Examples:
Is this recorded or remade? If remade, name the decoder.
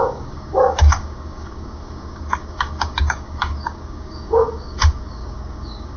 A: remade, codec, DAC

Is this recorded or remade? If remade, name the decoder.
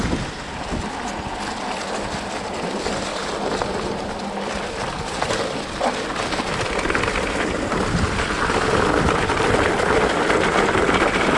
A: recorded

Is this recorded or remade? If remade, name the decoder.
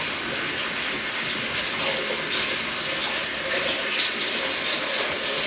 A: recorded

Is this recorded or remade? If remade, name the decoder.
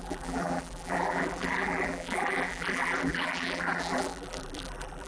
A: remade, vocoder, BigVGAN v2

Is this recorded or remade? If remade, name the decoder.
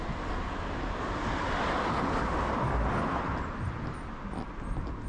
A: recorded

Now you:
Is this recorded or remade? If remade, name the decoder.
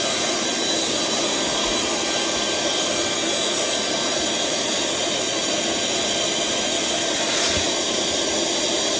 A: recorded